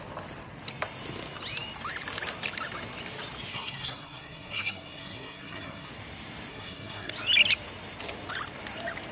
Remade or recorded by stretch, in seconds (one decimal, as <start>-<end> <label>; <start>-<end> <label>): 0.0-3.5 recorded; 3.5-5.9 remade; 5.9-6.5 recorded; 6.5-7.1 remade; 7.1-9.1 recorded